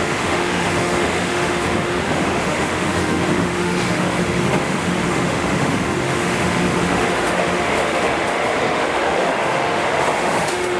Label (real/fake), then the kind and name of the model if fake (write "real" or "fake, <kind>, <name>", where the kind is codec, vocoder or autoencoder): fake, autoencoder, DAC-VAE